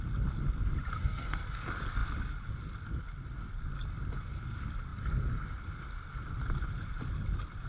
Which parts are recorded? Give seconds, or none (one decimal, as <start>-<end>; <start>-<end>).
0.0-1.0; 1.5-7.7